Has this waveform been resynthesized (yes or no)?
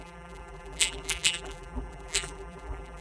yes